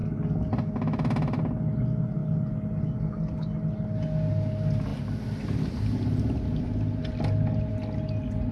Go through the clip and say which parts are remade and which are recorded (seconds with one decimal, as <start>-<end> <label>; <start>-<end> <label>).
0.0-8.5 recorded